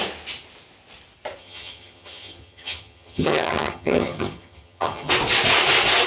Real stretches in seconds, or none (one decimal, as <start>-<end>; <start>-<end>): 0.0-1.4; 5.1-6.1